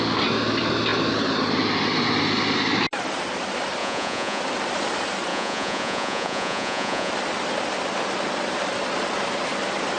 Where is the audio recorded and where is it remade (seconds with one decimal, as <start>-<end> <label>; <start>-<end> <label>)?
0.0-3.8 recorded; 3.8-4.4 remade; 4.4-5.3 recorded; 5.3-7.1 remade; 7.1-10.0 recorded